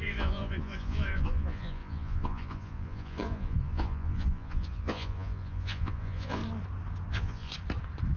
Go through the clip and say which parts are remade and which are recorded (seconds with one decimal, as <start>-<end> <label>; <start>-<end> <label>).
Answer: 0.0-6.4 remade; 6.4-7.1 recorded; 7.1-7.5 remade; 7.5-8.2 recorded